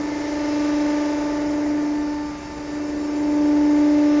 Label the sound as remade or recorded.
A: recorded